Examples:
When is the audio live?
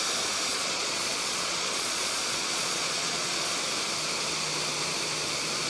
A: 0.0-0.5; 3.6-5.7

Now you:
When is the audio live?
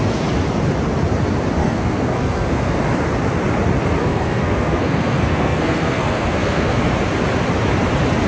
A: 0.0-1.6; 2.8-4.0; 6.8-8.3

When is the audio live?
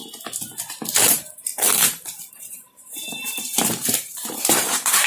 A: 0.0-0.9; 1.5-2.3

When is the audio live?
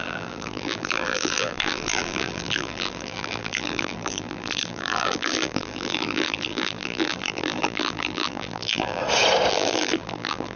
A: 9.0-9.5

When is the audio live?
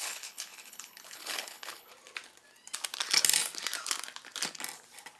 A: 1.9-5.2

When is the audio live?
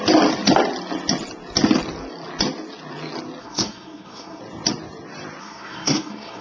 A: 0.0-3.4; 4.4-5.4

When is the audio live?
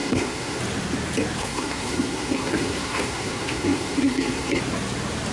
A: 0.6-1.4; 4.6-5.3